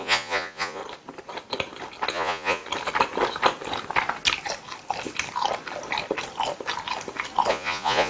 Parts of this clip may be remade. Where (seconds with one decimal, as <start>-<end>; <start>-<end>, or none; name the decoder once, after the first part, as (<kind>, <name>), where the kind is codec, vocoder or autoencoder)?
0.0-0.8 (vocoder, Vocos); 2.1-2.6; 7.5-8.1